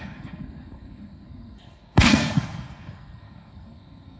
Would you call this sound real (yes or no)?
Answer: no